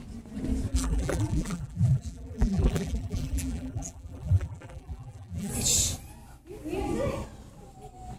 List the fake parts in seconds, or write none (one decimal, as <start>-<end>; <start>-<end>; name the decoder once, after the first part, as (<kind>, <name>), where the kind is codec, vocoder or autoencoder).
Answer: 0.7-5.5 (vocoder, BigVGAN v2)